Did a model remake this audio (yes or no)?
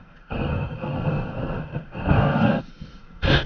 yes